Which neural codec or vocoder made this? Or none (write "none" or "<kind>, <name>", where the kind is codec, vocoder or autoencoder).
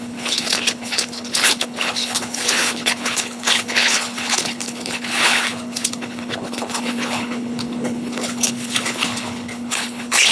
codec, HILCodec